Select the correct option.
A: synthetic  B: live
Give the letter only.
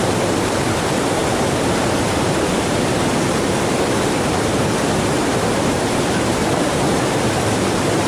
A